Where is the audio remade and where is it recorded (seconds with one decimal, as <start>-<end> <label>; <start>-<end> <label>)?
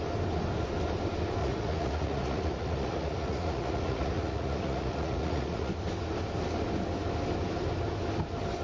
0.0-1.4 recorded; 1.4-5.7 remade; 5.7-8.6 recorded